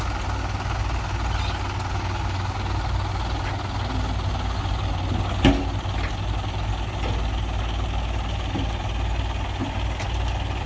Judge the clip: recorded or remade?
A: recorded